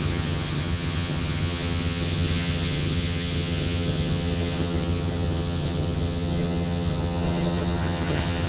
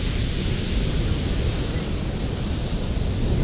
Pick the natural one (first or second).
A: second